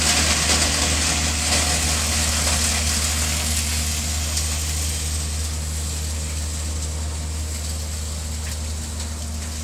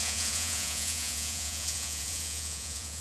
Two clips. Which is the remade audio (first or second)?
second